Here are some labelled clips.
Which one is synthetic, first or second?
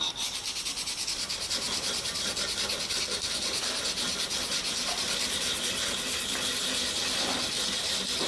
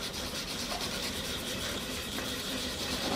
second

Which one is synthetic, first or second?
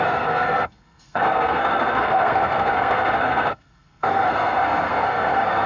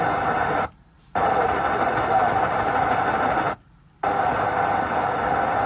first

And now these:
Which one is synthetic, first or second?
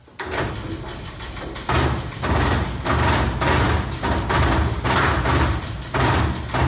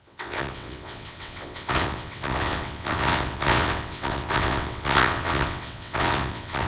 second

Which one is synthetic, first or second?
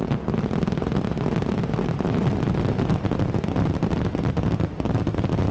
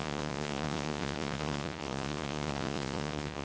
second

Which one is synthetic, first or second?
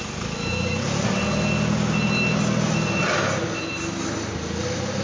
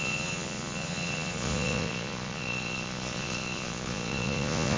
second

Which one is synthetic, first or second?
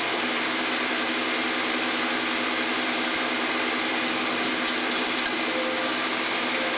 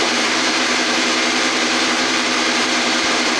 second